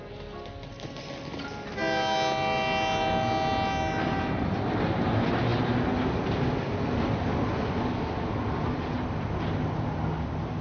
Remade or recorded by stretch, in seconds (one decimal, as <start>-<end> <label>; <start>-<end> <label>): 0.0-10.6 recorded